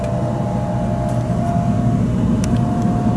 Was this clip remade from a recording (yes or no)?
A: no